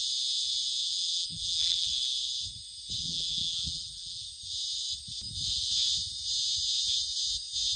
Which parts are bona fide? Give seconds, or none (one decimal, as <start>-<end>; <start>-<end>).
0.0-0.8; 1.9-3.0; 4.2-7.8